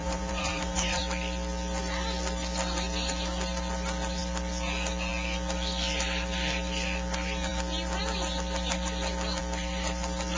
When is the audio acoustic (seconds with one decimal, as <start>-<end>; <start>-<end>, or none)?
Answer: 1.0-10.4